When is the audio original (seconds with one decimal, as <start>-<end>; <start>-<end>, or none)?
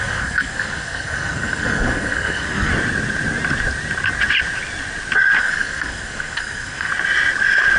2.7-5.4; 6.9-7.8